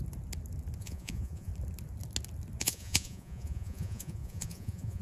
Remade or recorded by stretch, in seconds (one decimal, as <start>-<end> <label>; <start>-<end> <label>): 0.0-0.8 recorded; 0.8-1.5 remade; 1.5-2.6 recorded; 2.6-5.0 remade